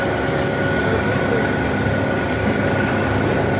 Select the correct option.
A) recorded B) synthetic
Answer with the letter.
A